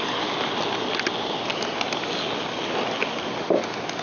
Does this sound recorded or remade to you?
recorded